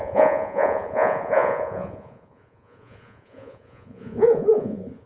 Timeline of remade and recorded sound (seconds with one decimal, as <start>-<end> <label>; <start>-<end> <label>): 0.0-5.1 remade